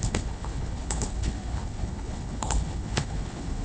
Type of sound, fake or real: fake